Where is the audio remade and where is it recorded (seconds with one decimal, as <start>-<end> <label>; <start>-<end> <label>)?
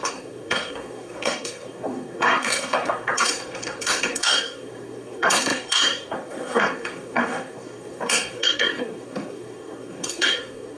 0.0-10.8 remade